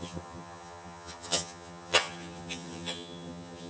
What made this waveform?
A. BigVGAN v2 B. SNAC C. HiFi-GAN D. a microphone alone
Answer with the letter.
C